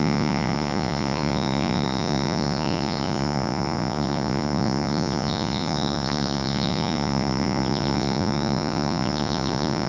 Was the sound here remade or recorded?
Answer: remade